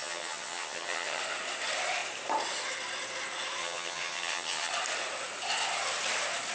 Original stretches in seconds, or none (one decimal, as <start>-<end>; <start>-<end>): 1.2-3.6; 4.7-6.5